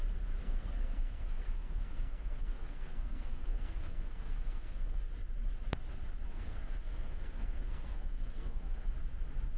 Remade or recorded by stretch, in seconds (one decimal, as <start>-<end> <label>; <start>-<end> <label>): 0.0-0.4 recorded; 0.4-5.0 remade; 5.0-6.3 recorded; 6.3-8.9 remade; 8.9-9.6 recorded

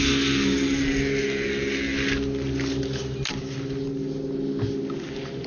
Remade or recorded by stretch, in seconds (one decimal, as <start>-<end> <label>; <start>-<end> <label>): 0.0-5.5 recorded

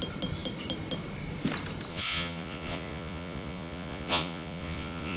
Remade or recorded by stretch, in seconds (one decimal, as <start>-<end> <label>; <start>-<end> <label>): 0.0-1.9 recorded; 1.9-5.2 remade

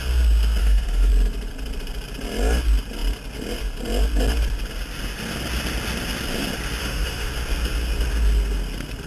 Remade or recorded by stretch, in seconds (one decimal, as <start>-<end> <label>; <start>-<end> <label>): 0.0-0.6 recorded; 0.6-1.1 remade; 1.1-6.8 recorded; 6.8-7.3 remade; 7.3-9.1 recorded

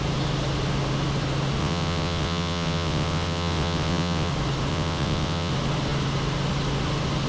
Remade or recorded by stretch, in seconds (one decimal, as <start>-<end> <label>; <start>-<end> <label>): 0.0-1.6 recorded; 1.6-4.3 remade; 4.3-4.7 recorded; 4.7-5.5 remade; 5.5-7.3 recorded

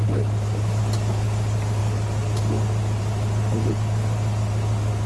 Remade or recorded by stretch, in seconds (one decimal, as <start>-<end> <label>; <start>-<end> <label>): 0.0-5.1 recorded

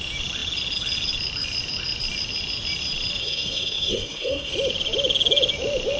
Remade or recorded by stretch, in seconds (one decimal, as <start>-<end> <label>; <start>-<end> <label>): 0.0-3.2 recorded; 3.2-4.5 remade; 4.5-6.0 recorded